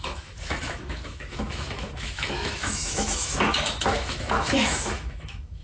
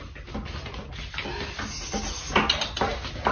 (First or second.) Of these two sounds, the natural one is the second